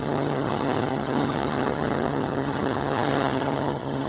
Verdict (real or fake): fake